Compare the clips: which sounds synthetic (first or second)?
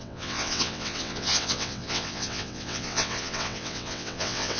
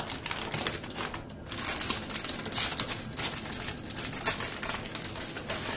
first